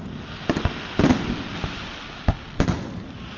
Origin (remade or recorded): recorded